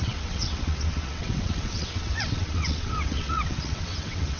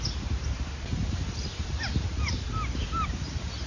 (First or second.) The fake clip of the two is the first